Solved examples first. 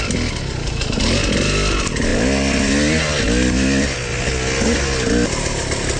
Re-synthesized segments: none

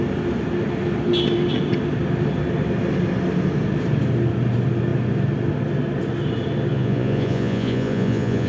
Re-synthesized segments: 6.7-8.5 (vocoder, Vocos)

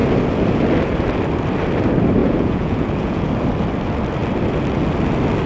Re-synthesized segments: 2.2-3.3 (vocoder, Vocos)

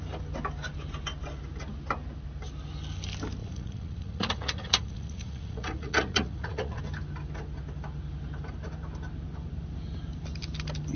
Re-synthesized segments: 3.4-6.8 (vocoder, Vocos)

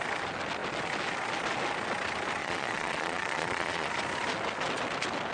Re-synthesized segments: 2.4-3.9 (vocoder, Vocos)